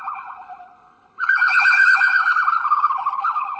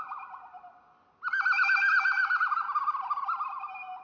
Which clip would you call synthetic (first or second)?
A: first